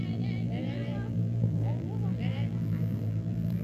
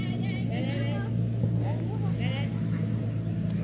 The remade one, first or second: first